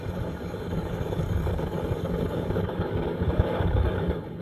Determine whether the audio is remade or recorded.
remade